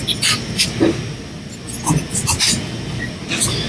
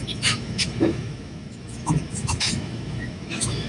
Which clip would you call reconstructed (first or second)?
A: second